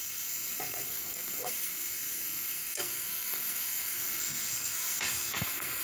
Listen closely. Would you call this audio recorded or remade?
remade